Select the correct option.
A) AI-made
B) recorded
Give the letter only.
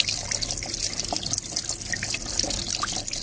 B